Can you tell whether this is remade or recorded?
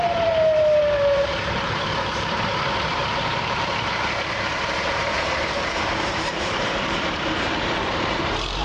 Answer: remade